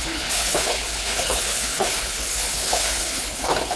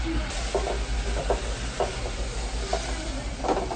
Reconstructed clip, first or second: first